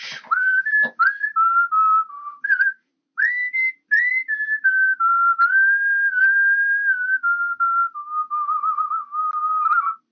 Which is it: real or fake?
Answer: real